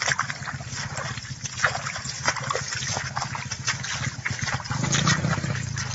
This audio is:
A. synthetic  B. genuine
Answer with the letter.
B